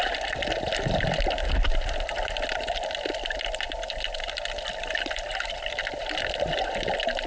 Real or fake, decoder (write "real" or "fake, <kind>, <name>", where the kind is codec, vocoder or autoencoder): real